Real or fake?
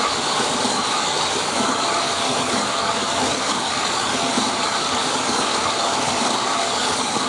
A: fake